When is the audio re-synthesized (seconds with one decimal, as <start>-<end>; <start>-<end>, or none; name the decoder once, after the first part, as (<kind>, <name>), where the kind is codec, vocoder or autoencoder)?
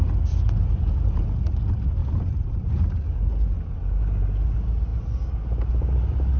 2.0-2.8 (vocoder, BigVGAN v2); 4.9-5.7